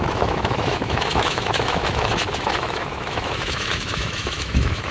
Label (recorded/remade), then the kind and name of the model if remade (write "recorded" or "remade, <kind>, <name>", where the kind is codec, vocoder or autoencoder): remade, autoencoder, DAC-VAE